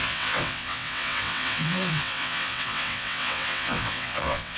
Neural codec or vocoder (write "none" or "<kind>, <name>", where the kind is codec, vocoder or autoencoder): vocoder, WaveNeXt